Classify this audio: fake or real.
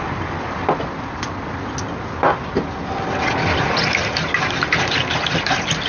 real